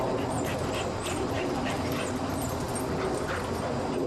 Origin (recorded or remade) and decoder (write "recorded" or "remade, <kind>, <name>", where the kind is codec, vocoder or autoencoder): recorded